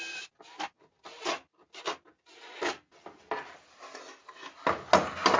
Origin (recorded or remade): recorded